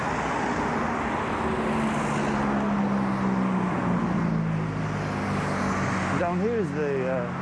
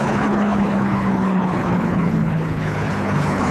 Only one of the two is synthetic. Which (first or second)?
second